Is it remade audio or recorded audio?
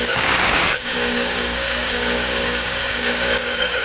remade